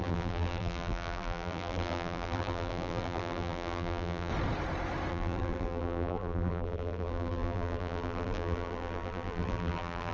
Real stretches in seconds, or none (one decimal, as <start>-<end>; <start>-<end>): 4.3-5.1